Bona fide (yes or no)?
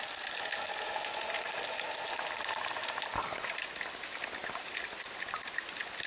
yes